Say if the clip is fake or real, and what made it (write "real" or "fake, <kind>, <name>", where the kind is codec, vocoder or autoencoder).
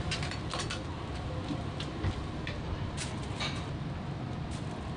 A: real